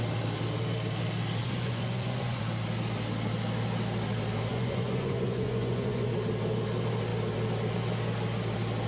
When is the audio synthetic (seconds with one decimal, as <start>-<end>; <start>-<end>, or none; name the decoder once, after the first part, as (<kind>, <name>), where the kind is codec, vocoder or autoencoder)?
1.4-2.4 (vocoder, Vocos); 4.5-6.1